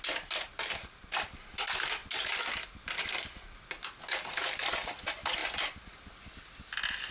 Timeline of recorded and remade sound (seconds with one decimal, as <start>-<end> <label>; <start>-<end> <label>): 0.0-7.1 recorded